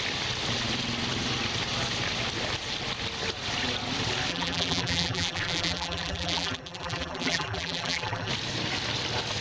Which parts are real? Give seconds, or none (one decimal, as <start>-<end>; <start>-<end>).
0.0-4.3; 8.3-9.4